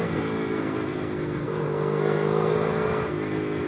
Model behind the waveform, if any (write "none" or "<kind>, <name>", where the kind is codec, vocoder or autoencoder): codec, SNAC